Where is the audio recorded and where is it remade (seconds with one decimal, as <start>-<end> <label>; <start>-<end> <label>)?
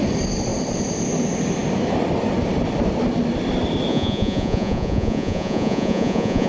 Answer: 0.0-3.9 recorded; 3.9-6.5 remade